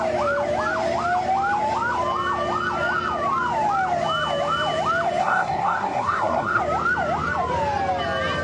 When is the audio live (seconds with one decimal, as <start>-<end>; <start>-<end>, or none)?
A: 0.0-5.2; 6.6-8.4